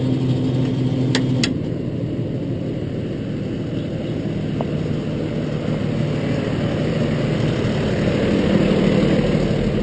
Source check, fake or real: real